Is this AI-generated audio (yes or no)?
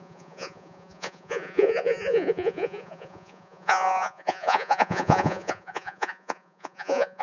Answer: yes